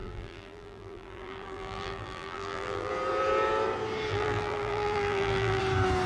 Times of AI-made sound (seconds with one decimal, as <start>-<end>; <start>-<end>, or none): 0.0-2.9; 4.1-5.6